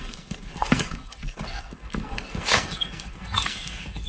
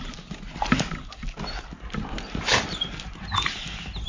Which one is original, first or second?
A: second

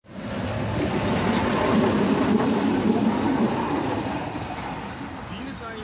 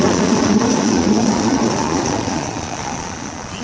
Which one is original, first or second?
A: first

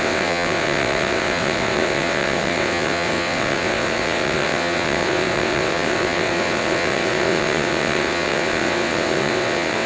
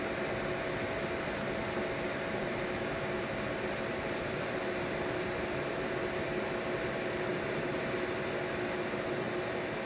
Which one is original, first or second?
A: second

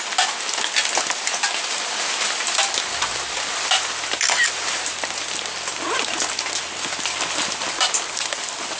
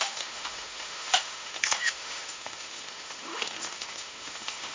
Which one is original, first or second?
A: first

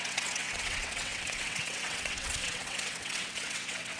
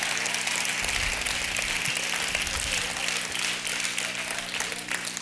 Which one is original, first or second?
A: second